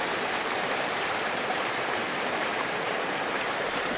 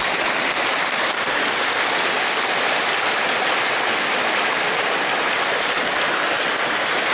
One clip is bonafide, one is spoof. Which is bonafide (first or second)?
second